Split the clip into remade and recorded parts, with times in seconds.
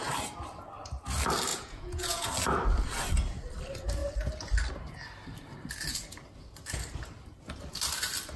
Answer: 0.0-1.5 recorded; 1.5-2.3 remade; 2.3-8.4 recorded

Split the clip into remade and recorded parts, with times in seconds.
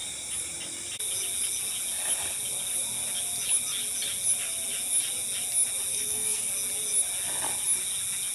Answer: 0.0-5.9 recorded; 5.9-6.5 remade; 6.5-8.3 recorded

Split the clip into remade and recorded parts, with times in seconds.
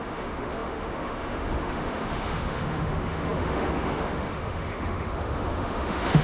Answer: 0.0-6.2 remade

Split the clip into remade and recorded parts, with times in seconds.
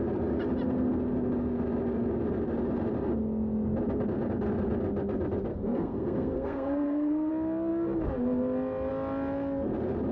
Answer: 0.0-5.5 recorded; 5.5-7.3 remade; 7.3-10.1 recorded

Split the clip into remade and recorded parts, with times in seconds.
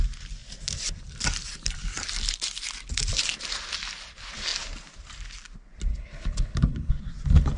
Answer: 0.0-5.9 recorded; 5.9-6.9 remade; 6.9-7.6 recorded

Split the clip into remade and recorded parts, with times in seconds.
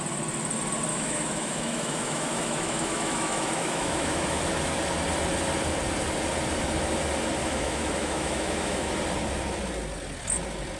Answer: 0.0-0.9 recorded; 0.9-4.4 remade; 4.4-7.4 recorded; 7.4-8.9 remade; 8.9-10.8 recorded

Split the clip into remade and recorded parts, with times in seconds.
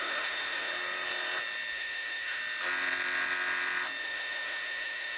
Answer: 0.0-0.7 remade; 0.7-1.7 recorded; 1.7-2.4 remade; 2.4-4.0 recorded; 4.0-5.2 remade